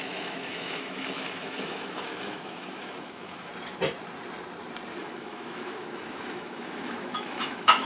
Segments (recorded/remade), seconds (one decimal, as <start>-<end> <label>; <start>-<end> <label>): 0.0-3.5 remade; 3.5-5.0 recorded; 5.0-7.8 remade